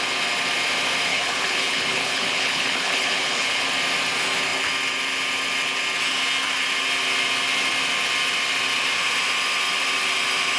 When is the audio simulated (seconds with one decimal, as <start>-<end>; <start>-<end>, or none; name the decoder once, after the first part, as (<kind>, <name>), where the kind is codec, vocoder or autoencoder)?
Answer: 1.1-3.6 (codec, HILCodec)